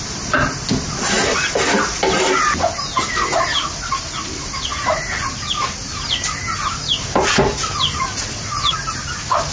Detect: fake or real real